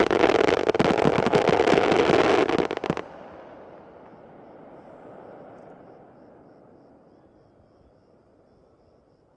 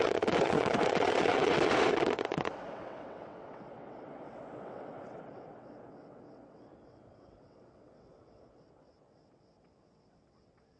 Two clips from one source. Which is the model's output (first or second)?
second